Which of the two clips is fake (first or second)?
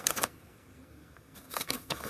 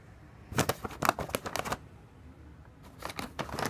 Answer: first